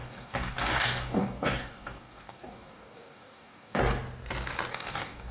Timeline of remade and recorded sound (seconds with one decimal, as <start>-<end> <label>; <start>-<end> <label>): 0.0-3.8 remade; 3.8-4.7 recorded; 4.7-5.3 remade